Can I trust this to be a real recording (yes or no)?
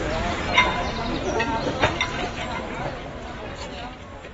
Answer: yes